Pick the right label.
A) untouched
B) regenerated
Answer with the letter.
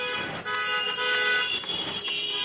A